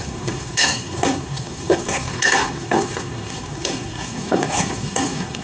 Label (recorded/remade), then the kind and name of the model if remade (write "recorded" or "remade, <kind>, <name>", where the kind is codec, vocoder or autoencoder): remade, codec, SNAC